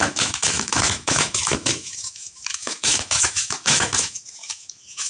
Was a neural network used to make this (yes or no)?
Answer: yes